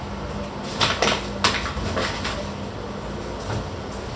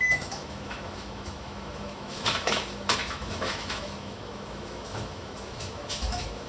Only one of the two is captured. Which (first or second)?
first